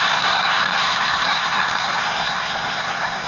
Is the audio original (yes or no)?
no